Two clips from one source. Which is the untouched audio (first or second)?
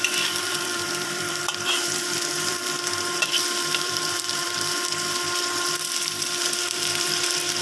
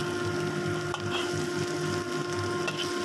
second